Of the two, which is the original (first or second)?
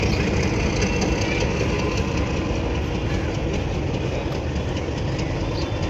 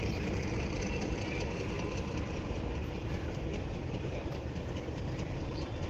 first